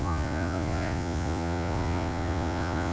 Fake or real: fake